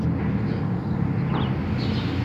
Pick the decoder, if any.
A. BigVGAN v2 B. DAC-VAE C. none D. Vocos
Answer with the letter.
C